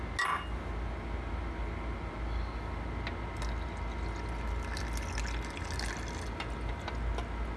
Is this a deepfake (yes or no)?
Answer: no